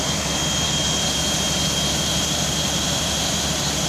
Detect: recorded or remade recorded